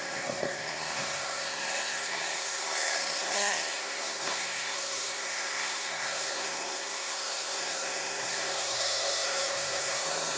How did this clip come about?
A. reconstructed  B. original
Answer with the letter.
A